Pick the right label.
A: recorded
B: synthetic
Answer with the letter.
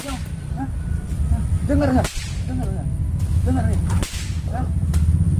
A